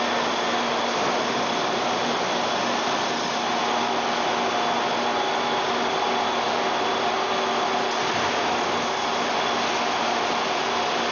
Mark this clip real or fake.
real